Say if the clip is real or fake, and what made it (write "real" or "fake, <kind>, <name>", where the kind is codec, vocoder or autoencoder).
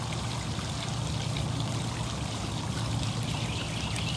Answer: real